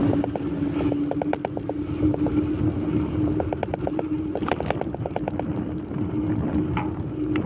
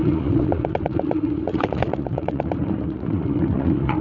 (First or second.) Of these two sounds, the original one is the first